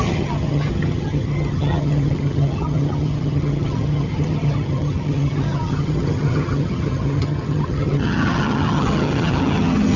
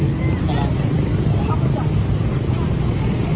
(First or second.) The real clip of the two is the second